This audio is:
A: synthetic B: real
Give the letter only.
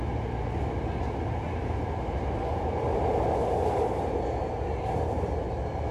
B